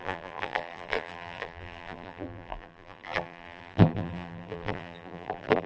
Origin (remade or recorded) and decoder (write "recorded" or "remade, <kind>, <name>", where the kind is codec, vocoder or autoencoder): remade, vocoder, BigVGAN v2